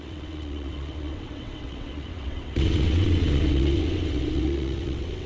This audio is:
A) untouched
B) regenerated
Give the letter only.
B